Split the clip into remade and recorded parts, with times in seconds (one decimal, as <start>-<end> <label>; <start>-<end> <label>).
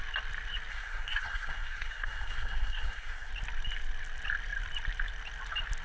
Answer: 0.0-0.7 recorded; 0.7-3.3 remade; 3.3-5.8 recorded